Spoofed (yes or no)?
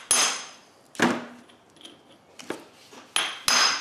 no